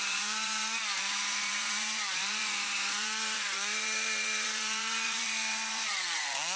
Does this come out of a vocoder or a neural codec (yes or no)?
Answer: yes